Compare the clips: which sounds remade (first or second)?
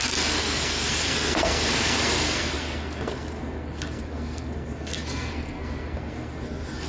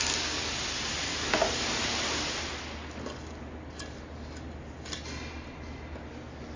first